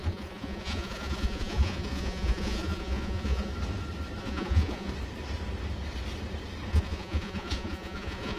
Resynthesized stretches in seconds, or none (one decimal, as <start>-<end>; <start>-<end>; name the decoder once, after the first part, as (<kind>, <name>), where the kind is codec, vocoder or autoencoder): 0.0-3.5 (vocoder, Vocos); 4.2-4.9; 6.7-8.4